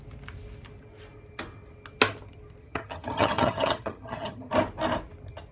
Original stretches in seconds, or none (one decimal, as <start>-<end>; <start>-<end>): 0.0-2.6; 4.5-5.5